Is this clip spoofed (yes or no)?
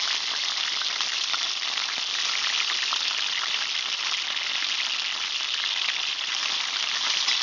no